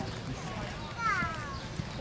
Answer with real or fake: real